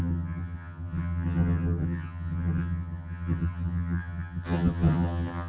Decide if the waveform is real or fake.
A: fake